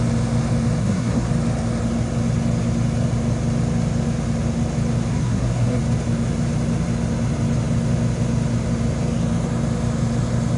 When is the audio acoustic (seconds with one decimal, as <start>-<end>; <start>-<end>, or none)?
0.0-0.8; 1.3-5.1; 5.8-10.6

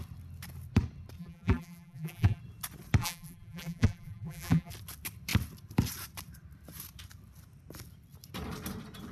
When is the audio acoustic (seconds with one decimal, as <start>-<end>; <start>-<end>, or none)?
0.0-1.2; 2.4-3.0; 4.7-9.1

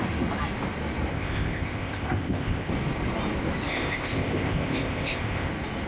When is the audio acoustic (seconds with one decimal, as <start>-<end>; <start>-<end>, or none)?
0.0-1.1; 2.7-3.7; 5.5-5.9

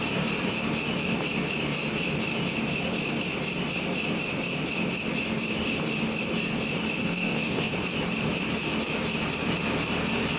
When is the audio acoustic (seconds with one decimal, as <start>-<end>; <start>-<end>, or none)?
0.0-7.0; 7.7-10.4

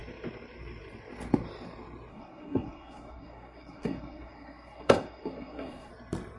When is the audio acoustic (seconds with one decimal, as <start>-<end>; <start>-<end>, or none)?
0.0-2.1; 5.9-6.4

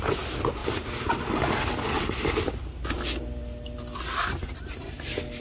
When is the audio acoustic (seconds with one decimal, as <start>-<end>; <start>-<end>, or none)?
0.0-5.4